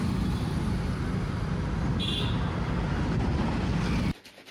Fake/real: real